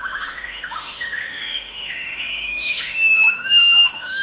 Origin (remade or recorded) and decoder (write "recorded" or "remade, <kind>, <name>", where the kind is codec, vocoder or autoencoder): remade, autoencoder, DAC-VAE